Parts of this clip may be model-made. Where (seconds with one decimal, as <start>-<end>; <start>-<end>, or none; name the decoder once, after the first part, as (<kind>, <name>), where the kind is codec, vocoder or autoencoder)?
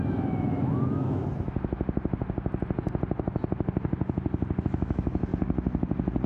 0.0-1.2 (autoencoder, DAC-VAE); 4.6-5.3